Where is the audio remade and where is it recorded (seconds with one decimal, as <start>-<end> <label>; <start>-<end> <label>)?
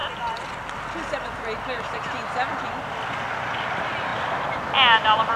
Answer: 0.0-5.4 recorded